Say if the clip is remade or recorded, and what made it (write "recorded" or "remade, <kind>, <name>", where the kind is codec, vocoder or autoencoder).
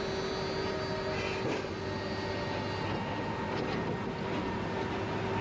recorded